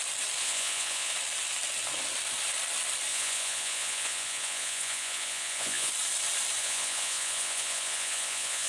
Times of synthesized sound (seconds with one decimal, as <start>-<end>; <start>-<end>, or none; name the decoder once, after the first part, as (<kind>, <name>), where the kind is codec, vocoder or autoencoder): 0.4-1.1 (vocoder, Vocos); 3.1-5.9; 6.6-8.7